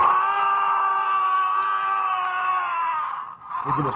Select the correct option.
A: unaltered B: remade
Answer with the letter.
A